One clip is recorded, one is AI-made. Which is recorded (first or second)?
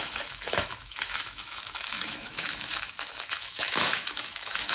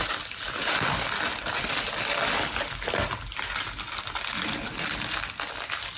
second